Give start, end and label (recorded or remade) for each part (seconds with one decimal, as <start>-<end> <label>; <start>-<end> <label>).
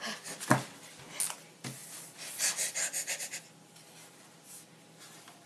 0.0-5.5 recorded